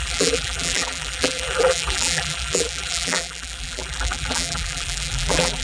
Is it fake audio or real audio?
fake